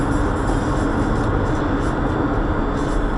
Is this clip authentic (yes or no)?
yes